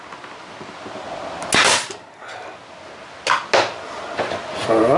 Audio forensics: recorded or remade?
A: recorded